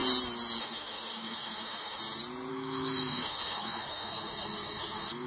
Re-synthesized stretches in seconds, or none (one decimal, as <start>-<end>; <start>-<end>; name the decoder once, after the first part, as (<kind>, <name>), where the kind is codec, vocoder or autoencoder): 0.6-2.0 (autoencoder, DAC-VAE); 2.5-5.3